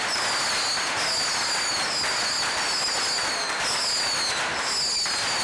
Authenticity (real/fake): real